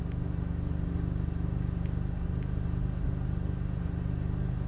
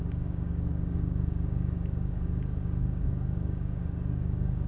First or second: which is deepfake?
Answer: second